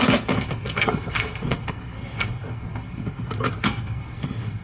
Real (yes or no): no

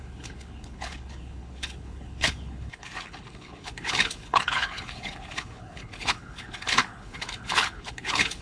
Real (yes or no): no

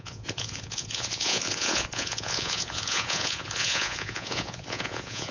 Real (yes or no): no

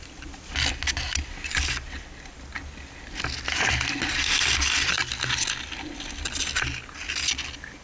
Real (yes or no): yes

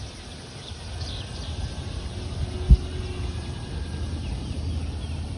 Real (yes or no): yes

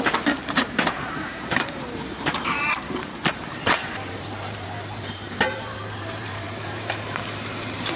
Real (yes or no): no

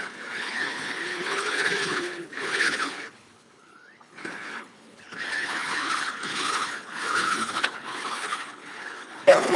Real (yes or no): no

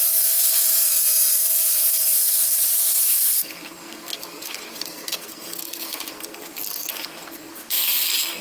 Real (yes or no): no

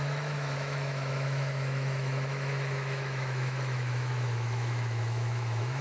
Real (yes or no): no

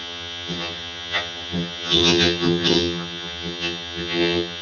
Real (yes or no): no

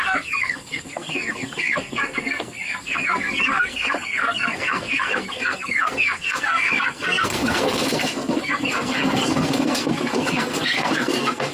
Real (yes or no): no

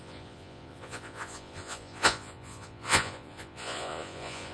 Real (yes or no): no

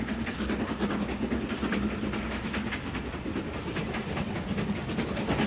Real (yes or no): yes